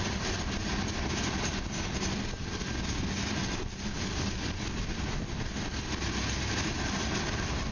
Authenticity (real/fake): real